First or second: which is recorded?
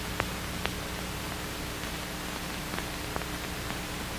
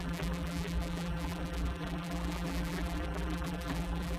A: first